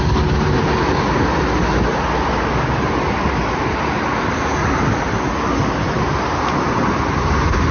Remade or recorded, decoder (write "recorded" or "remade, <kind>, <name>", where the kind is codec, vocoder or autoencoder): recorded